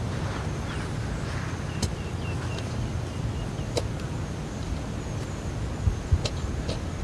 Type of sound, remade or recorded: recorded